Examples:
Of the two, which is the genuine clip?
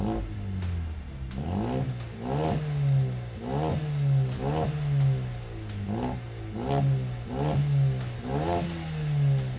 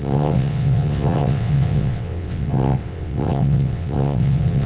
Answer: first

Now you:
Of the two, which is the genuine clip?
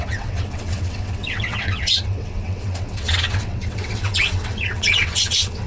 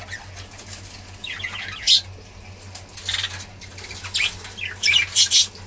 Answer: second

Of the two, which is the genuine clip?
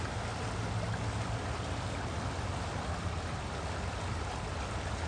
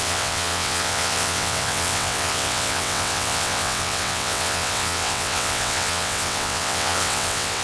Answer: first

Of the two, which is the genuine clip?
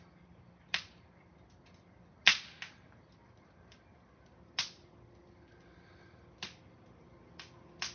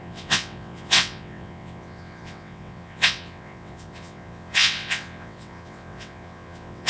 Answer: first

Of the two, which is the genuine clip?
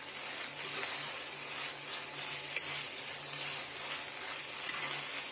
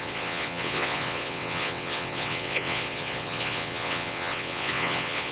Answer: first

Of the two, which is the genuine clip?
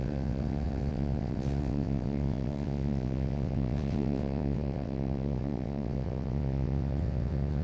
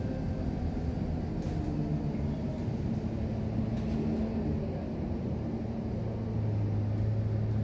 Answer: second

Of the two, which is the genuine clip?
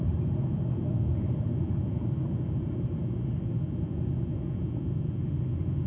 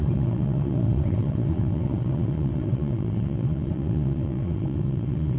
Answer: first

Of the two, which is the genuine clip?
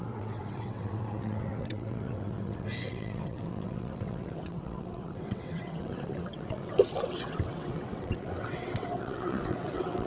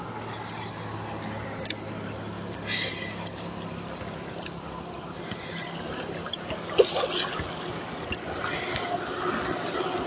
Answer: second